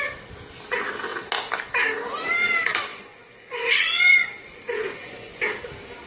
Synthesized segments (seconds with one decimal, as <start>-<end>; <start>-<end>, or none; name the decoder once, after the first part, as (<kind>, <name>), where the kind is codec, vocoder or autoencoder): 2.9-5.4 (vocoder, Vocos)